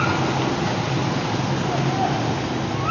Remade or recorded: recorded